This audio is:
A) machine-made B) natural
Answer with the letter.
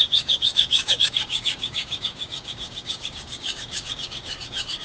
A